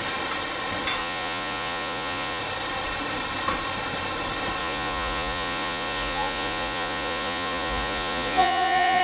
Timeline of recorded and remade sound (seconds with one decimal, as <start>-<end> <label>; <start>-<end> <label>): 0.0-1.0 recorded; 1.0-2.4 remade; 2.4-4.6 recorded; 4.6-9.0 remade